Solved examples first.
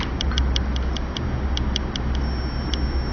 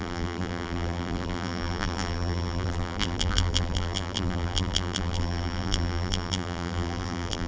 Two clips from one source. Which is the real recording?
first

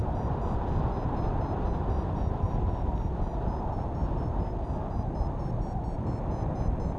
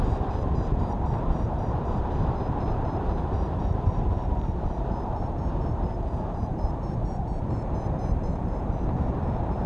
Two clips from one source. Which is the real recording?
first